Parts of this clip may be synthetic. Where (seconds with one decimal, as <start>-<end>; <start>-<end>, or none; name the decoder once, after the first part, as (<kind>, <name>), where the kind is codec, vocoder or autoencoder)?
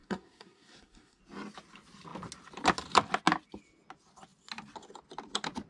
0.0-1.2 (codec, SNAC)